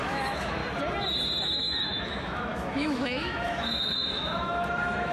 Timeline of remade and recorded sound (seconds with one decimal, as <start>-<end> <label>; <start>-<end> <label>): 0.0-0.6 remade; 0.6-1.4 recorded; 1.4-5.1 remade